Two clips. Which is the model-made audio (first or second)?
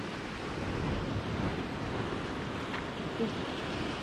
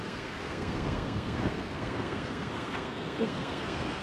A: second